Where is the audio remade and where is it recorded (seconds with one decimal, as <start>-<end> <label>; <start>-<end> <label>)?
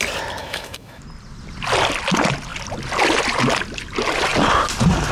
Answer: 0.0-0.4 recorded; 0.4-1.0 remade; 1.0-5.1 recorded